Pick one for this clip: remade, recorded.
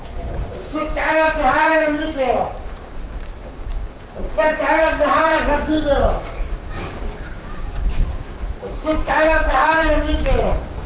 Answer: remade